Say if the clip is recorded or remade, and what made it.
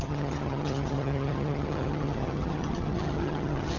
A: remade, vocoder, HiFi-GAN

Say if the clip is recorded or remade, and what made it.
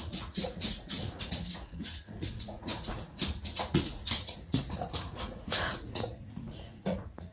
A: remade, vocoder, Vocos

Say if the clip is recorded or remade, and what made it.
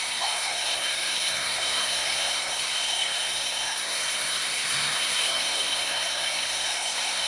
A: remade, codec, SNAC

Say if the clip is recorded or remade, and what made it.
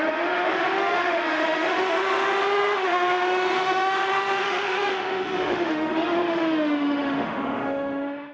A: remade, autoencoder, DAC-VAE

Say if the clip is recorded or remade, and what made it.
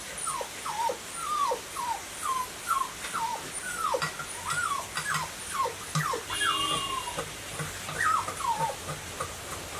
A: recorded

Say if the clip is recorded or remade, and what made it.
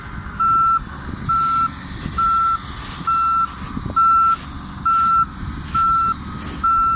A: recorded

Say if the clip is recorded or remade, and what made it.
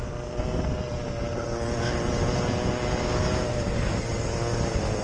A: recorded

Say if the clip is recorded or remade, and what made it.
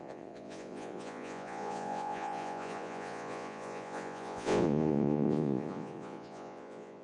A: remade, vocoder, Vocos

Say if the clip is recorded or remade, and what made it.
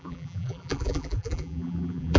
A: remade, vocoder, BigVGAN v2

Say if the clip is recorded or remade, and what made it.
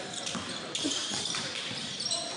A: remade, vocoder, BigVGAN v2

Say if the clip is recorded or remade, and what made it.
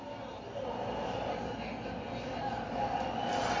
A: recorded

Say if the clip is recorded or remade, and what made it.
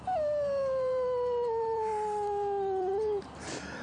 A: remade, vocoder, BigVGAN v2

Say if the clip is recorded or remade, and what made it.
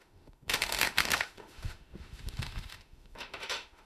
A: remade, autoencoder, DAC-VAE